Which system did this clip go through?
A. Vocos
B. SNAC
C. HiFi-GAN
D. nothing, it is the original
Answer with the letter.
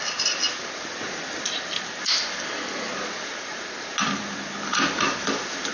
D